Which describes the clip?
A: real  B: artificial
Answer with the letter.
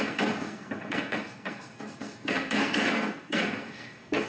B